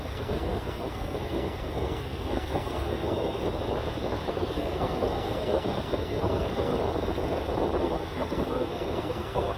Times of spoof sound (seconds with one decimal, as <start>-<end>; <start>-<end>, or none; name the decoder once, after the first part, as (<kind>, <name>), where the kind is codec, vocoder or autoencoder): 0.0-3.4 (codec, SNAC); 4.3-6.7; 7.8-9.6